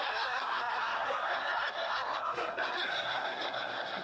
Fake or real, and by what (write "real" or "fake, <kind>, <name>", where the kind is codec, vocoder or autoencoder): fake, codec, SNAC